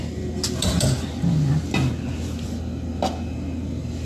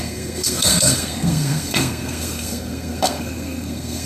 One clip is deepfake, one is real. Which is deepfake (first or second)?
second